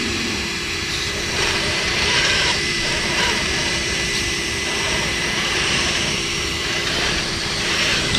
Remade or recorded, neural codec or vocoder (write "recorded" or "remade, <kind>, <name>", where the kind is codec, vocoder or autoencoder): remade, vocoder, BigVGAN v2